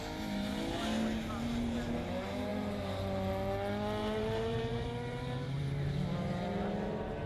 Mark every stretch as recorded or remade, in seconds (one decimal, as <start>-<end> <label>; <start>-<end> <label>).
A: 0.0-4.0 recorded; 4.0-5.6 remade; 5.6-7.3 recorded